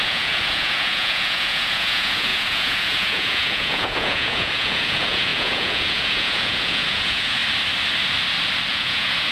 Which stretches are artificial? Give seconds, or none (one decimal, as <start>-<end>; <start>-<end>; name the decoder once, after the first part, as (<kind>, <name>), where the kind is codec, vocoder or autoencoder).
0.0-7.4 (vocoder, Vocos); 8.7-9.3